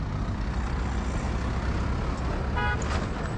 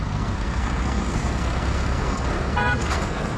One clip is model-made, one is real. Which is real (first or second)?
first